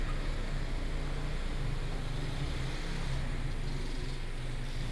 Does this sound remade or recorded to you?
recorded